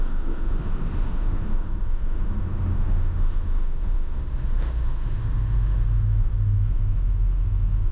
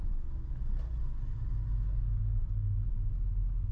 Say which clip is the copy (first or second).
first